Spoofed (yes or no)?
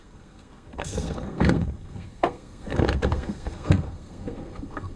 yes